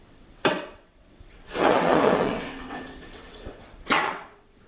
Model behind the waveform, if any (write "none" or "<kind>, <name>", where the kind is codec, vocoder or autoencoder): vocoder, WaveNeXt